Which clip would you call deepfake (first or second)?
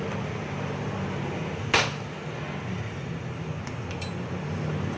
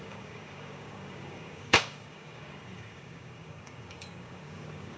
second